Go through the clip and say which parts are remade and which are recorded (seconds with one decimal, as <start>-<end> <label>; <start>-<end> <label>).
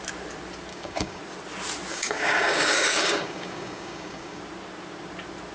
0.0-0.7 recorded; 0.7-1.2 remade; 1.2-1.9 recorded; 1.9-4.4 remade; 4.4-5.5 recorded